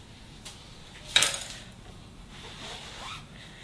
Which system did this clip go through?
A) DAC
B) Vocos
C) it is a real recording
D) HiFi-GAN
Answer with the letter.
C